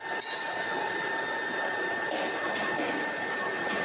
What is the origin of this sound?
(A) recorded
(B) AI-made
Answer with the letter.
A